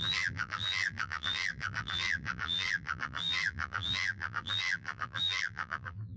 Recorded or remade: remade